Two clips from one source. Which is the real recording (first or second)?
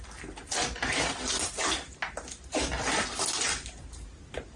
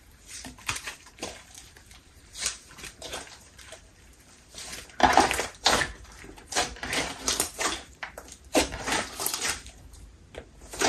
first